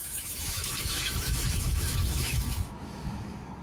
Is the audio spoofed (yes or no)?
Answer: yes